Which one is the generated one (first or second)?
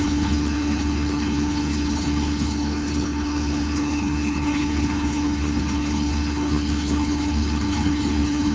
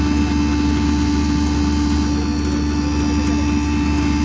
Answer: first